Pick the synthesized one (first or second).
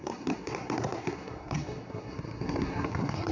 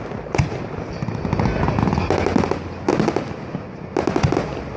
first